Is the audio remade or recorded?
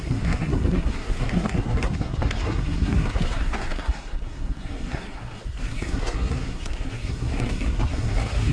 remade